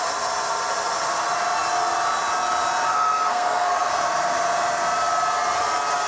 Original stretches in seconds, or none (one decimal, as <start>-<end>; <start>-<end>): 0.0-2.9; 3.9-6.1